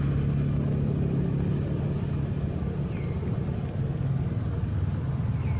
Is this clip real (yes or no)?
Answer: yes